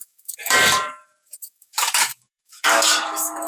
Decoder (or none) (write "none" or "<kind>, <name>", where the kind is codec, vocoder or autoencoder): codec, DAC